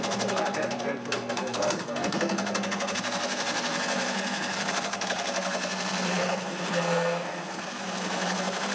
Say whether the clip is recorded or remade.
remade